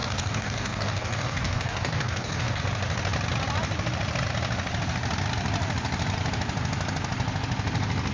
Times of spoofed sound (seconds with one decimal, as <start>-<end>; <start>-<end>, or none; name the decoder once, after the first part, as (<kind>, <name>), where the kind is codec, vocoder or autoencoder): 0.0-2.6 (codec, DAC)